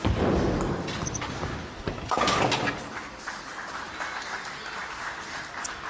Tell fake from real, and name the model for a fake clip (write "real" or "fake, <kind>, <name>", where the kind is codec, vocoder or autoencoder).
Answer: real